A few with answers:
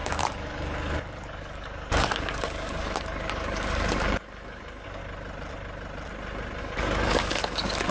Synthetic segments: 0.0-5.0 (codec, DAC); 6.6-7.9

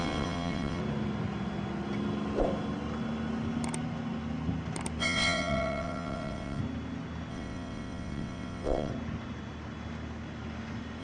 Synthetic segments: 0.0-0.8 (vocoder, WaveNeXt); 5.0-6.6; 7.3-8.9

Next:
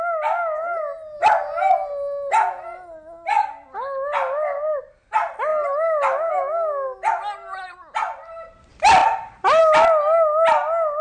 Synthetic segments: 9.0-9.6 (vocoder, BigVGAN v2)